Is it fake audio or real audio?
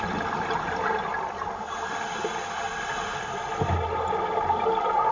real